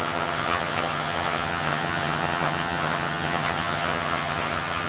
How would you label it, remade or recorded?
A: remade